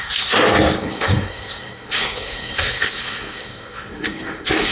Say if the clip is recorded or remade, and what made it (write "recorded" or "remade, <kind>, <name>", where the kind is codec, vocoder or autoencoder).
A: remade, codec, SNAC